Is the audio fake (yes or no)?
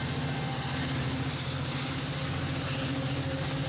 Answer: no